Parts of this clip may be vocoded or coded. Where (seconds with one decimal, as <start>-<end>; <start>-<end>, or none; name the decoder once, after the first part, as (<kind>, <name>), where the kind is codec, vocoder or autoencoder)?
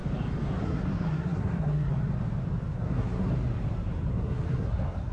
0.6-1.9 (codec, SNAC); 2.7-3.3; 4.1-5.1